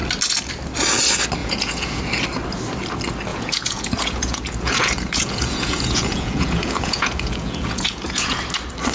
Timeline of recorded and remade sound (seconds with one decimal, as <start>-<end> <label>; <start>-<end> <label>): 0.0-1.4 recorded; 1.4-2.0 remade; 2.0-3.3 recorded; 3.3-8.4 remade; 8.4-8.9 recorded